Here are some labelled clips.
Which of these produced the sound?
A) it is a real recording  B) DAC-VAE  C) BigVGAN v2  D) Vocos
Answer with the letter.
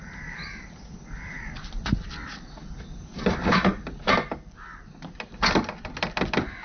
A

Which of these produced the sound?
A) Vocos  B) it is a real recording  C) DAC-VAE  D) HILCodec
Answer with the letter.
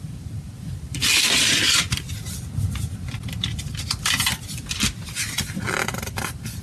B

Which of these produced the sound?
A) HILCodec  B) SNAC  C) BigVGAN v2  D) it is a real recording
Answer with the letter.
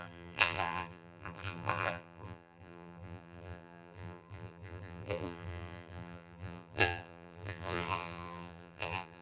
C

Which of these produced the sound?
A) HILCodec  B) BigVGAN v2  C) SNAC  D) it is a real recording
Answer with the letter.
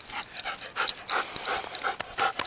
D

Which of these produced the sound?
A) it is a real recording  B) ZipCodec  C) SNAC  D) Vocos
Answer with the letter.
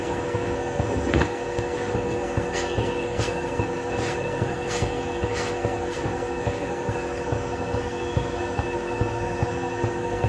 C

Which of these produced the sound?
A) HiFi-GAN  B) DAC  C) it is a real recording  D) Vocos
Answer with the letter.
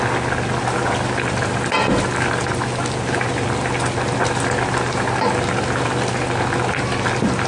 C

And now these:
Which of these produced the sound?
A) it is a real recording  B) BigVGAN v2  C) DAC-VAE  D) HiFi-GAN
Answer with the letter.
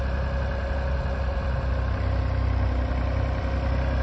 A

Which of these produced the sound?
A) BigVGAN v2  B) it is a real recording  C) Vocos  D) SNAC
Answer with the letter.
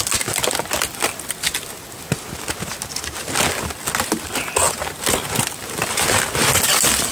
B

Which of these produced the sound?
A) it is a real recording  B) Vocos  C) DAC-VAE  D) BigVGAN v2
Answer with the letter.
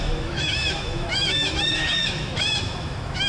C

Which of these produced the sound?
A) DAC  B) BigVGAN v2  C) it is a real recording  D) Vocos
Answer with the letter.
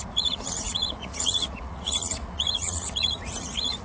D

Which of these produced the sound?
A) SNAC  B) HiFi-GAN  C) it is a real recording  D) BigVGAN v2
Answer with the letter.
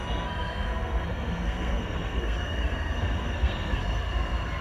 A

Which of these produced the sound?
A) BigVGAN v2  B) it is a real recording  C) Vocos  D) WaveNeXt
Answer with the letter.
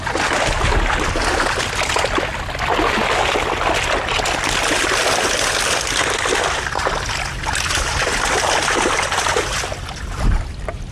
B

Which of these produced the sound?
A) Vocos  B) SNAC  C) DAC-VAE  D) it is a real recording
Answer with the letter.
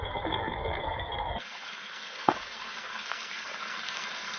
B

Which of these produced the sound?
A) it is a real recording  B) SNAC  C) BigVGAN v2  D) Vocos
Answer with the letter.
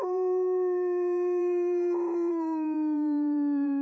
C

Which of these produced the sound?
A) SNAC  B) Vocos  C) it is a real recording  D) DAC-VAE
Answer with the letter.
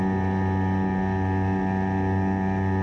C